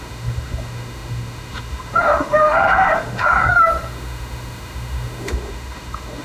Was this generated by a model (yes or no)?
yes